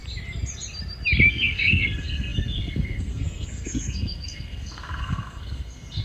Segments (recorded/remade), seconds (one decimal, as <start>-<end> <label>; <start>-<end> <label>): 0.0-1.3 recorded; 1.3-6.0 remade